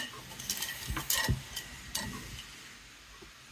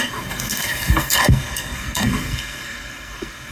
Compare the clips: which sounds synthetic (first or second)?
second